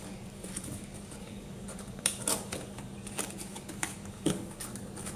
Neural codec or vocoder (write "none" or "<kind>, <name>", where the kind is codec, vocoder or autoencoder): codec, DAC